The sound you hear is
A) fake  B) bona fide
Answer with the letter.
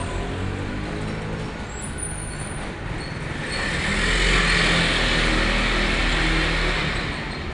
B